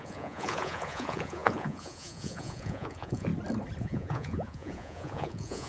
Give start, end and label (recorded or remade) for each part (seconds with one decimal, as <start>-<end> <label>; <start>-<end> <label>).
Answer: 0.0-3.3 remade; 3.3-3.8 recorded; 3.8-5.7 remade

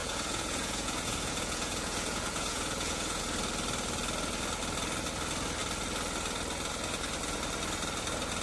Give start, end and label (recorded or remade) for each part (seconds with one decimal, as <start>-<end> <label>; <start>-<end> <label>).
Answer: 0.0-3.2 remade; 3.2-8.4 recorded

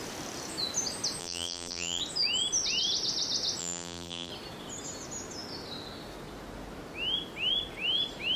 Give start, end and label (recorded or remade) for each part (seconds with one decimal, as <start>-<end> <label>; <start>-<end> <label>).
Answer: 0.0-1.2 recorded; 1.2-2.0 remade; 2.0-3.6 recorded; 3.6-4.3 remade; 4.3-8.4 recorded

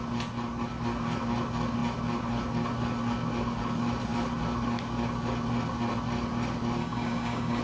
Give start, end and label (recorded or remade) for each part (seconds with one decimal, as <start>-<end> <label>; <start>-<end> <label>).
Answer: 0.0-6.8 recorded; 6.8-7.6 remade

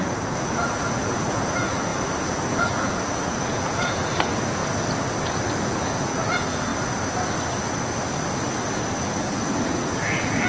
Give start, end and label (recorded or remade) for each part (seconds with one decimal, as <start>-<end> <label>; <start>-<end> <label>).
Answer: 0.0-4.6 remade; 4.6-5.6 recorded; 5.6-6.7 remade; 6.7-9.0 recorded; 9.0-10.5 remade

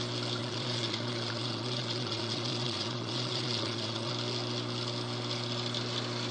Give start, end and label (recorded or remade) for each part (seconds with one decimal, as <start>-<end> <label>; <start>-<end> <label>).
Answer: 0.0-0.4 recorded; 0.4-4.1 remade; 4.1-6.3 recorded

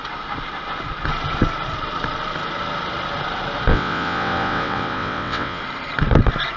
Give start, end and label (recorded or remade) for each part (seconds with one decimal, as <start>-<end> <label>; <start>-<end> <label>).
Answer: 0.0-3.7 recorded; 3.7-5.6 remade; 5.6-6.6 recorded

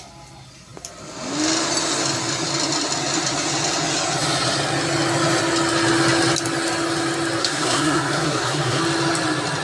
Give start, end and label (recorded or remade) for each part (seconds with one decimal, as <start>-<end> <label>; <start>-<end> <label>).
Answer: 0.0-7.4 recorded; 7.4-8.8 remade; 8.8-9.6 recorded